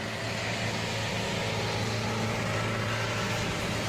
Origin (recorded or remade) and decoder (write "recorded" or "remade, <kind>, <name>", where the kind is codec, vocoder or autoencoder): recorded